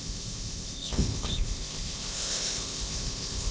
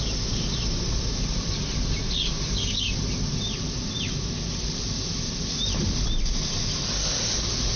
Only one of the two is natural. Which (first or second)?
second